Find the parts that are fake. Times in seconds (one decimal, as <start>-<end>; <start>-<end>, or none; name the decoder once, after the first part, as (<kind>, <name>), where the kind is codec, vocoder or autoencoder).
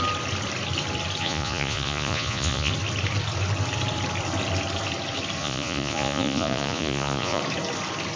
1.2-2.7 (vocoder, Vocos); 5.4-7.4